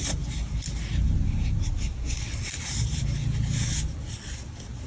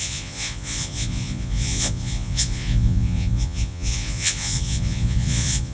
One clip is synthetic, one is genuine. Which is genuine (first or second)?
first